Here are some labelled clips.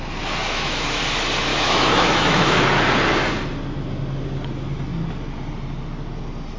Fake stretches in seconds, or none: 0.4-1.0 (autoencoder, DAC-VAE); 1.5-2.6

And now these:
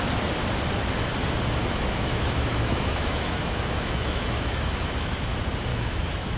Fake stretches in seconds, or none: 1.6-5.3 (autoencoder, DAC-VAE); 5.7-6.4

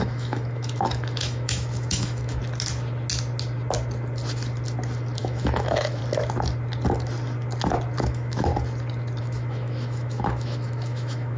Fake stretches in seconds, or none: 0.0-2.4 (autoencoder, DAC-VAE); 5.2-6.0; 8.0-8.5; 9.2-11.4

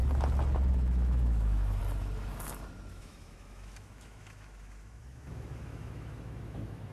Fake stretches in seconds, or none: 0.7-1.8 (autoencoder, DAC-VAE); 2.9-6.9

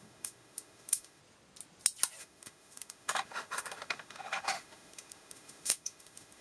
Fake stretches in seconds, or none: 0.0-1.2 (autoencoder, DAC-VAE); 2.2-6.4